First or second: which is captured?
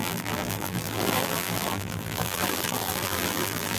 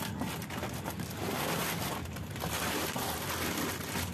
second